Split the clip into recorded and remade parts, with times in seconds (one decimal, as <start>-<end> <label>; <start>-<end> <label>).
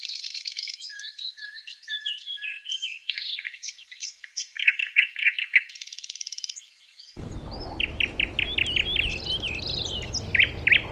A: 0.0-7.3 remade; 7.3-10.9 recorded